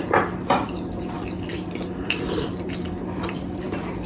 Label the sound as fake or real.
fake